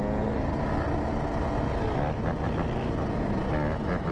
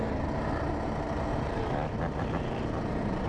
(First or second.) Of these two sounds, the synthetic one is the second